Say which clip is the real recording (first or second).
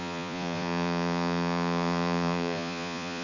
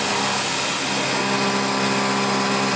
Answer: second